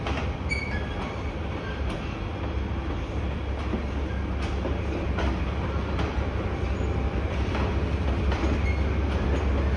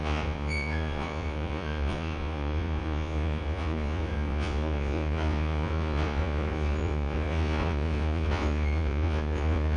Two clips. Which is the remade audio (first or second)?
second